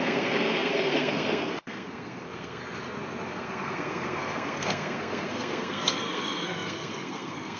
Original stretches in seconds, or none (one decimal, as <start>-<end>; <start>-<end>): 2.6-3.3